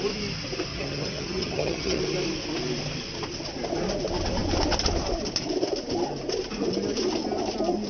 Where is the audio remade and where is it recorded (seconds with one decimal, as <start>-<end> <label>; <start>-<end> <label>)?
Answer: 0.0-0.7 recorded; 0.7-2.0 remade; 2.0-7.9 recorded

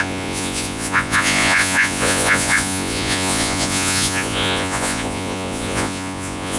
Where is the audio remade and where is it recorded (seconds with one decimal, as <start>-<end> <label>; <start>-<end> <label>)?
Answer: 0.0-6.6 remade

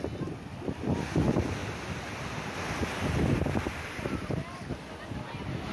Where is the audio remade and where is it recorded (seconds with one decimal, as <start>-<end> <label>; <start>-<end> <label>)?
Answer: 0.0-5.7 recorded

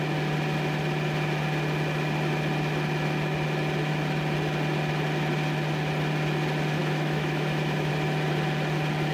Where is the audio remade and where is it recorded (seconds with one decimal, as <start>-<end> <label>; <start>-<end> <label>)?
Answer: 0.0-6.8 recorded; 6.8-7.9 remade; 7.9-9.1 recorded